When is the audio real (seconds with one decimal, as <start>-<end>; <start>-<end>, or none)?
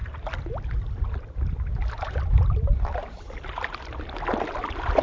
0.0-5.0